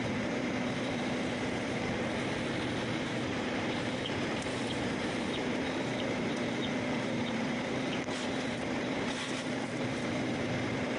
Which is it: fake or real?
fake